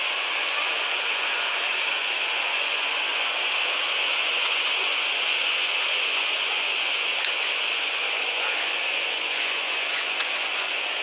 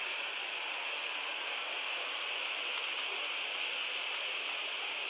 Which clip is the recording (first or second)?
second